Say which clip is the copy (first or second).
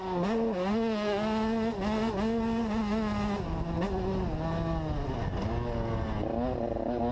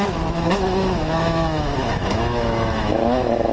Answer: second